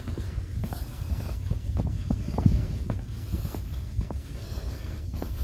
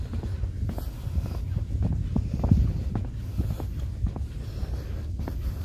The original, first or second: second